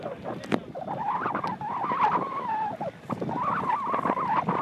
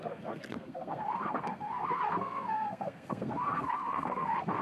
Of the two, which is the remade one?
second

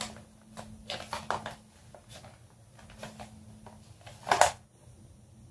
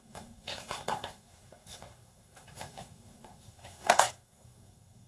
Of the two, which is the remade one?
second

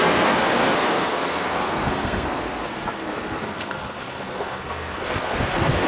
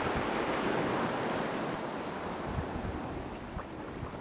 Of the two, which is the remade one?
first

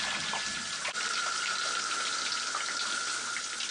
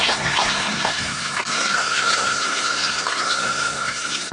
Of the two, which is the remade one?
second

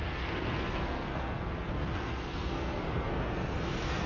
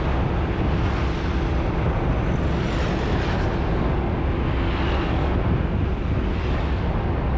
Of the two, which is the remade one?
first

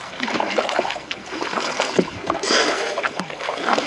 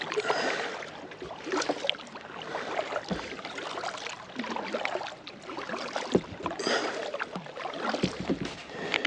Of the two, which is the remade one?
first